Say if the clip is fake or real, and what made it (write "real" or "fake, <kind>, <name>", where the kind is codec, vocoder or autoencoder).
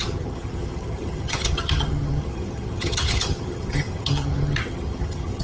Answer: fake, vocoder, HiFi-GAN